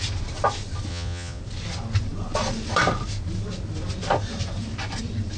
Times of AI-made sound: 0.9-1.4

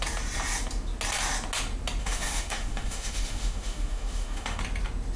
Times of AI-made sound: 2.0-4.6

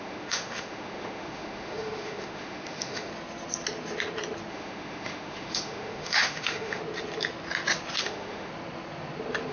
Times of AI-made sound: 0.0-3.1; 4.5-6.8; 8.0-8.5

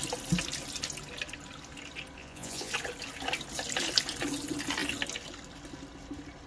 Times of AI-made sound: 2.2-2.7

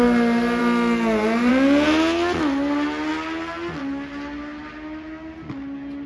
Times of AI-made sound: none